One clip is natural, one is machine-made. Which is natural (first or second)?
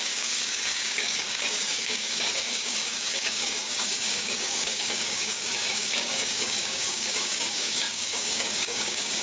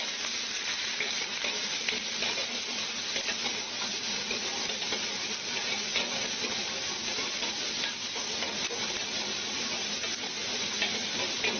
second